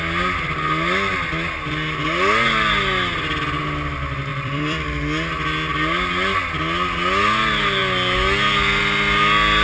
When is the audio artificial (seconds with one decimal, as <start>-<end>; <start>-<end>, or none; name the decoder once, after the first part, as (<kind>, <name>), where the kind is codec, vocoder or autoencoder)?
4.3-4.8 (vocoder, BigVGAN v2)